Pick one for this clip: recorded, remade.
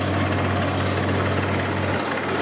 recorded